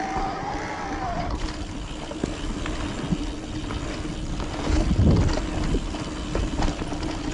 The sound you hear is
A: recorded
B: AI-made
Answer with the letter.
A